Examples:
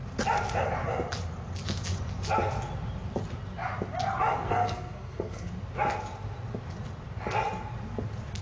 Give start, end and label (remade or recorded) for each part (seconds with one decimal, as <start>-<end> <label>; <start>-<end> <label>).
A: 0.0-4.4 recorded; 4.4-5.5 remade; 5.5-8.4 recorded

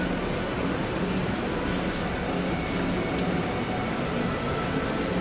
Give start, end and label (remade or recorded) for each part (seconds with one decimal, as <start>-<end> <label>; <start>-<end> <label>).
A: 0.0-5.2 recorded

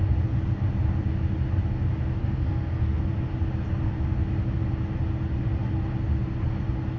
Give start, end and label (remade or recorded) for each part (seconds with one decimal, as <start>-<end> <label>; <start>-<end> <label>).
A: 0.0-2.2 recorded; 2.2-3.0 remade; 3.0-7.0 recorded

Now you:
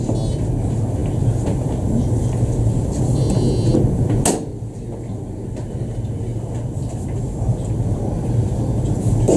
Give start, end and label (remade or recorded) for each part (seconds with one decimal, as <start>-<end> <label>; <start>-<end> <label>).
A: 0.0-9.4 recorded